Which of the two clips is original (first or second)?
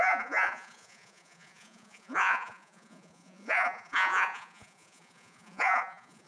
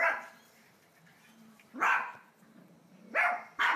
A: second